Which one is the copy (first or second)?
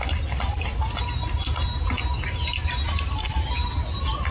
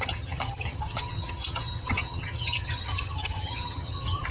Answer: second